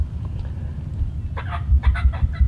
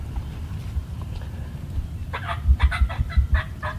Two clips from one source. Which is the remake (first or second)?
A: second